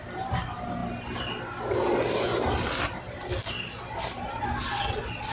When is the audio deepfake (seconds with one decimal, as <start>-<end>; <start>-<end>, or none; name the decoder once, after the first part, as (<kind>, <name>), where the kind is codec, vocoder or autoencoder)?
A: none